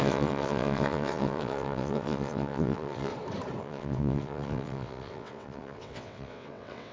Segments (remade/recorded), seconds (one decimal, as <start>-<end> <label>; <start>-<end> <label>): 0.0-3.1 remade; 3.1-3.6 recorded; 3.6-6.9 remade